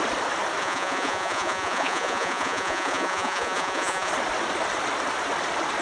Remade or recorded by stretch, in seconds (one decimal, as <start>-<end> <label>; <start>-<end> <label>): 0.0-0.6 recorded; 0.6-4.1 remade; 4.1-5.8 recorded